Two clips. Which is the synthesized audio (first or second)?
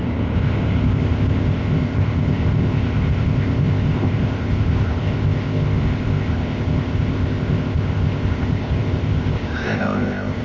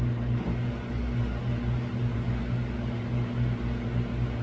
first